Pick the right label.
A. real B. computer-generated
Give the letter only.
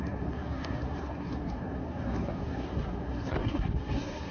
B